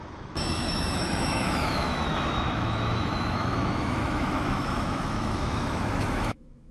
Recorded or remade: remade